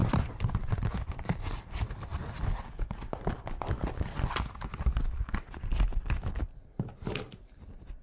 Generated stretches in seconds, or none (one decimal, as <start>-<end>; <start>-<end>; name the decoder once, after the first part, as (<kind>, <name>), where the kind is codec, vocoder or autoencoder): 0.0-1.6 (vocoder, BigVGAN v2)